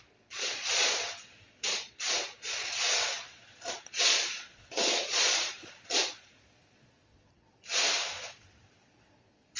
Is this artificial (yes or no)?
yes